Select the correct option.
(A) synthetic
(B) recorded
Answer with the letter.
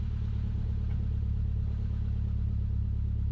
B